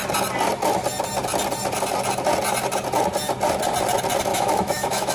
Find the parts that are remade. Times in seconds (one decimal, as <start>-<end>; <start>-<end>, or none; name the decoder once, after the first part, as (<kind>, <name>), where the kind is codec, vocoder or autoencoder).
4.3-5.1 (autoencoder, DAC-VAE)